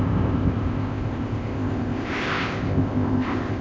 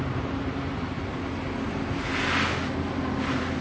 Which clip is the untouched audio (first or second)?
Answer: second